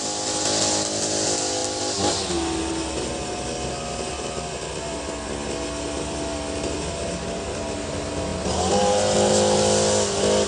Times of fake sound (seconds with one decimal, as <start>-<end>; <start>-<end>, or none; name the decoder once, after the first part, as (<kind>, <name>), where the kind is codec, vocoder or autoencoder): none